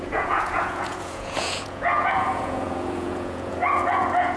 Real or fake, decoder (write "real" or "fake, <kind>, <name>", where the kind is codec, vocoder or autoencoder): fake, vocoder, Vocos